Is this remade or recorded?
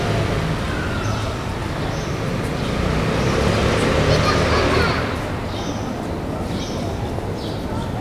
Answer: recorded